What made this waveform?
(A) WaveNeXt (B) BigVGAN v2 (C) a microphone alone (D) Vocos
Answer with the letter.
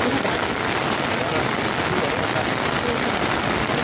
C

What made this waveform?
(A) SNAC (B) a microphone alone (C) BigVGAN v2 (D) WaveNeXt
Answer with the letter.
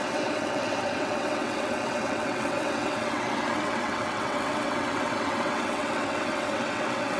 D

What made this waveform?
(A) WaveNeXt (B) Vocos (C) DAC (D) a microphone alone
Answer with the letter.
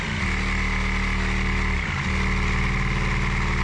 D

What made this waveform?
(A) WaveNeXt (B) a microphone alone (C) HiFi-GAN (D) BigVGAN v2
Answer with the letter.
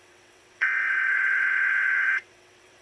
A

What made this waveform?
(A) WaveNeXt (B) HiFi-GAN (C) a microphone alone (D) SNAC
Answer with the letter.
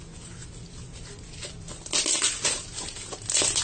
C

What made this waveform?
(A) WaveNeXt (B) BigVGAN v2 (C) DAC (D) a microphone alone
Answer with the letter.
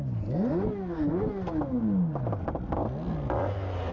D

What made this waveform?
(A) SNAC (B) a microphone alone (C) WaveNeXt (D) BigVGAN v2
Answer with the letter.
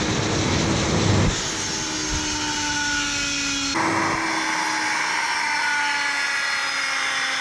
B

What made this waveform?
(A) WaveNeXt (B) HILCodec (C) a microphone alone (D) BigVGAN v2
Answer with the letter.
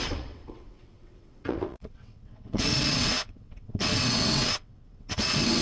A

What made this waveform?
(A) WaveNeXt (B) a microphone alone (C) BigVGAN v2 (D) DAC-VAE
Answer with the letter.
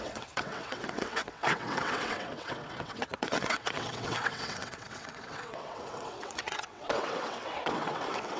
A